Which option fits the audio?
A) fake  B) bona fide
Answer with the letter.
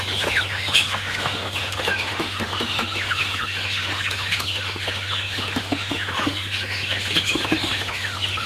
A